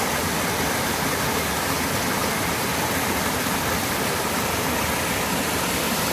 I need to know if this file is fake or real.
real